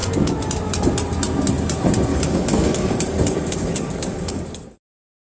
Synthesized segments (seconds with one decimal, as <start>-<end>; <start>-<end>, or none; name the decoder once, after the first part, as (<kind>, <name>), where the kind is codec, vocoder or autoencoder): 2.1-5.3 (codec, DAC)